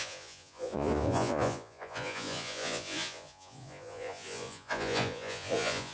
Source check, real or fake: fake